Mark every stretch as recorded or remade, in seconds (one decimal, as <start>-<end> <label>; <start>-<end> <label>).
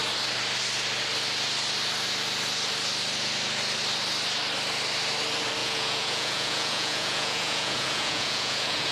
0.0-5.6 recorded; 5.6-8.9 remade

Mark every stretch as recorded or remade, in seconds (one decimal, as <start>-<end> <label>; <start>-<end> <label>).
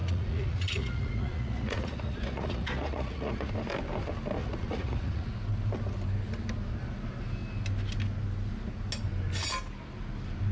0.0-3.5 remade; 3.5-4.4 recorded; 4.4-5.3 remade; 5.3-10.5 recorded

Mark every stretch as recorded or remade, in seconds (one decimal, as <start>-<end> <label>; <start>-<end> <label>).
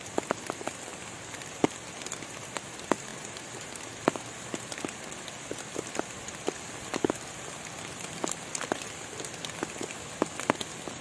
0.0-11.0 recorded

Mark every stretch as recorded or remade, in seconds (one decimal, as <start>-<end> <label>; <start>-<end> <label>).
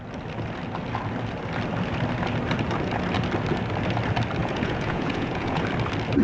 0.0-4.4 recorded; 4.4-5.6 remade; 5.6-6.2 recorded